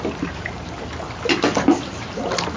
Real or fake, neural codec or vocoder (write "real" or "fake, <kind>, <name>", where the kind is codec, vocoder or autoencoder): real